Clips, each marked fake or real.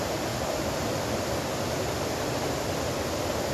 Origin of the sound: real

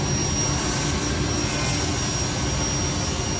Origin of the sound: real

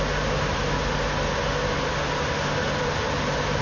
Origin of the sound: real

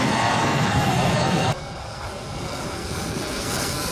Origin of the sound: fake